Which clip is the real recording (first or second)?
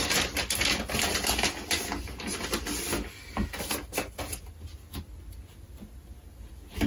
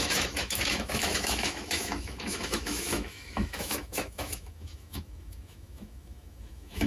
first